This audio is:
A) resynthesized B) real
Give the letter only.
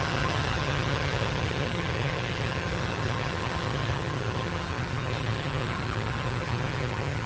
A